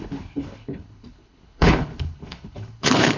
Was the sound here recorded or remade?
remade